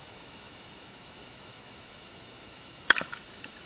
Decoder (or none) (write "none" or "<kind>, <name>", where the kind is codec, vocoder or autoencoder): autoencoder, DAC-VAE